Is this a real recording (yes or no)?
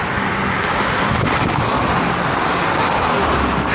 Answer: yes